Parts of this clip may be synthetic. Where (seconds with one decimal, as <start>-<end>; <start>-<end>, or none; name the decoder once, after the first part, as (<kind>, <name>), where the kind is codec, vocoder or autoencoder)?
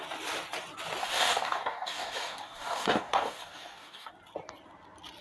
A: 1.0-4.1 (codec, DAC)